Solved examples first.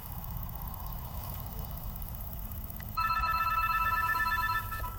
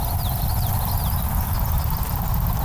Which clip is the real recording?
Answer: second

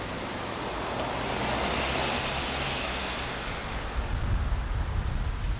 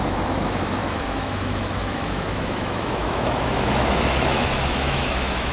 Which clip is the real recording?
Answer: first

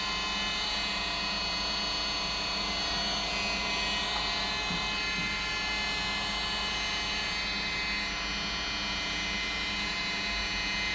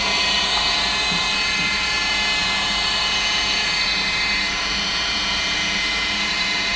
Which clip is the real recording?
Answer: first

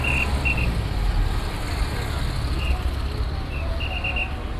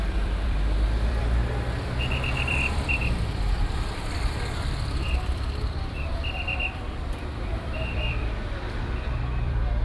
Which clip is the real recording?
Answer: first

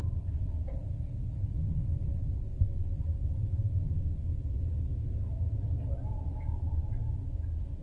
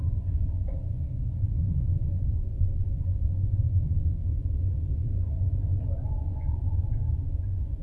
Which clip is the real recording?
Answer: first